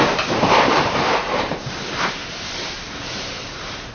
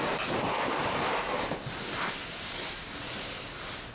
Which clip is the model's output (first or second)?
first